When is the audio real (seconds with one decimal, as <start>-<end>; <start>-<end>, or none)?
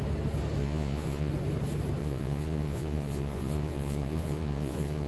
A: 0.0-0.6; 1.3-2.0